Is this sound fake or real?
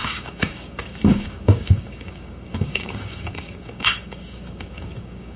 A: fake